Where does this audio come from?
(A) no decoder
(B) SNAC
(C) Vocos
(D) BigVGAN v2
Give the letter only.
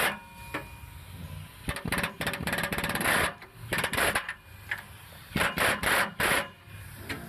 A